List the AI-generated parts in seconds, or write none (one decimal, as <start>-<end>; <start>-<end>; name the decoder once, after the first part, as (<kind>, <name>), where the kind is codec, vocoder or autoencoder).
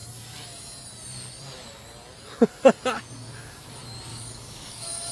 4.1-5.1 (codec, DAC)